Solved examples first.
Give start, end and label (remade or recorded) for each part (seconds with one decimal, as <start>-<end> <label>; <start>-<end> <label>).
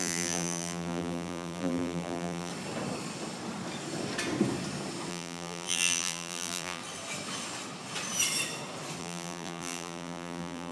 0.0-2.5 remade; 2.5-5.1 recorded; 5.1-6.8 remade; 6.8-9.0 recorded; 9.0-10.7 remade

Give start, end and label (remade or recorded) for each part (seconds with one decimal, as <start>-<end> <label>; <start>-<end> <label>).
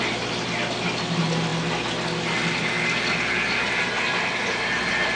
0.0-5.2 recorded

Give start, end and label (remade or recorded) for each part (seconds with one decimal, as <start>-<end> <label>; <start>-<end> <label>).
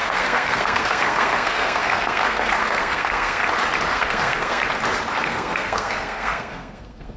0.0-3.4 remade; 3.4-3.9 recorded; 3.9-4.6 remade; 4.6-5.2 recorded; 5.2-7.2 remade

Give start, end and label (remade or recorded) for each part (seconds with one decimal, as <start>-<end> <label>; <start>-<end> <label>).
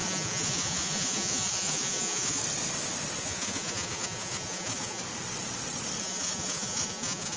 0.0-2.4 remade; 2.4-3.2 recorded; 3.2-5.0 remade; 5.0-6.0 recorded; 6.0-7.4 remade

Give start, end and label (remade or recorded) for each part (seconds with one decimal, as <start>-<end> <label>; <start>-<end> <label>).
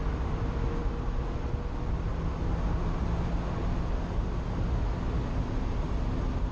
0.0-6.5 recorded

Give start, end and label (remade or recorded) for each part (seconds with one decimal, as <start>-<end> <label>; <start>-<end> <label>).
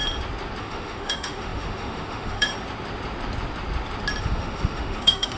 0.0-0.6 recorded; 0.6-2.5 remade; 2.5-4.2 recorded; 4.2-5.4 remade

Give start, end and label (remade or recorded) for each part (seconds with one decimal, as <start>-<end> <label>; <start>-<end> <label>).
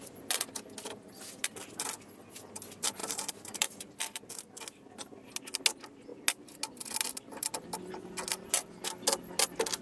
0.0-3.0 recorded; 3.0-4.0 remade; 4.0-9.8 recorded